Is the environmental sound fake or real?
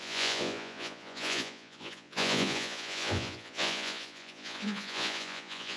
fake